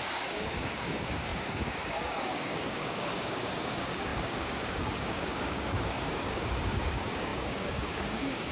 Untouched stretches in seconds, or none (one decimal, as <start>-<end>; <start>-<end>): none